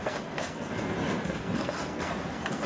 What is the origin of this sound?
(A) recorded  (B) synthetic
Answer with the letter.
B